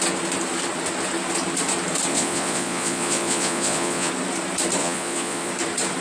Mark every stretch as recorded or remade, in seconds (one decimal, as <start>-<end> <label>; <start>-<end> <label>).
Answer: 0.0-2.1 recorded; 2.1-4.1 remade; 4.1-4.8 recorded; 4.8-5.5 remade; 5.5-6.0 recorded